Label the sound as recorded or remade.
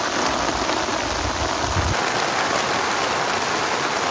recorded